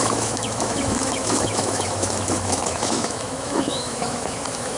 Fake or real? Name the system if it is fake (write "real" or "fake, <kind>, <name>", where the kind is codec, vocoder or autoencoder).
fake, autoencoder, DAC-VAE